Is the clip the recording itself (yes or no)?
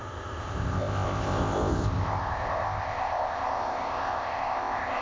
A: no